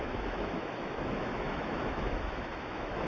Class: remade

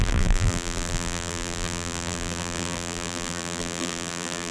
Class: remade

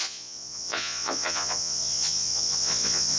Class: remade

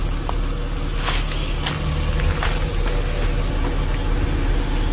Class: recorded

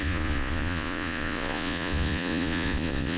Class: remade